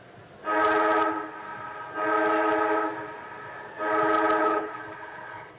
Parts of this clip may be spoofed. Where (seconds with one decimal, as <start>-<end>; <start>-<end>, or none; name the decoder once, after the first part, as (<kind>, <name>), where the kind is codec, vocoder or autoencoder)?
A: 4.4-5.6 (codec, HILCodec)